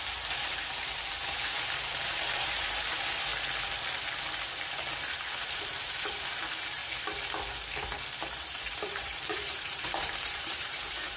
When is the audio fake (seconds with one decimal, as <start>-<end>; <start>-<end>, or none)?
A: 0.0-3.3; 4.9-6.8; 8.2-11.2